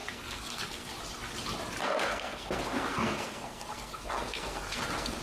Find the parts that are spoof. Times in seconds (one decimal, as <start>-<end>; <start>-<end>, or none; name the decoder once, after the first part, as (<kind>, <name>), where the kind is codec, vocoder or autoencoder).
0.0-0.9 (codec, SNAC); 1.8-5.2